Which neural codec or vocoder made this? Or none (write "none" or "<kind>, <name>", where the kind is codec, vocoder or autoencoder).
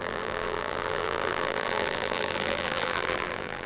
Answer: vocoder, BigVGAN v2